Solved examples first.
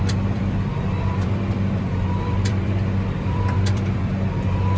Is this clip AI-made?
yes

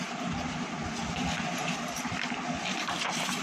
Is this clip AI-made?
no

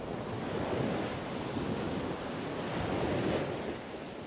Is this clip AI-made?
no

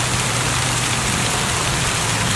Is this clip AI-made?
yes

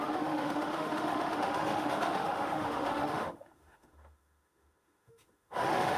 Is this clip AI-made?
yes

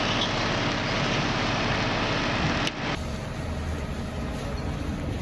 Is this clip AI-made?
no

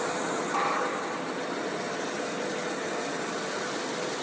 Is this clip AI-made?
no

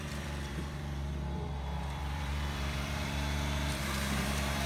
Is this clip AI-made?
yes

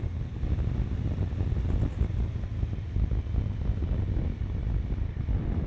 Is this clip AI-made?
no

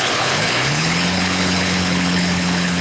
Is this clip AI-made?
yes